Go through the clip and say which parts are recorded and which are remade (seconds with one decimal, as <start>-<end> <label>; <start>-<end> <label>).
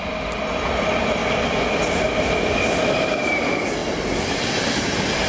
0.0-5.3 recorded